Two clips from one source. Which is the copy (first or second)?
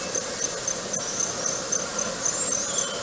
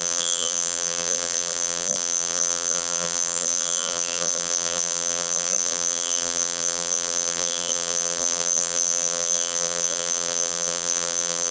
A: second